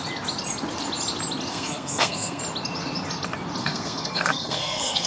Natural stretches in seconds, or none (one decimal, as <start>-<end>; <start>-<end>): 0.0-1.5; 2.4-3.6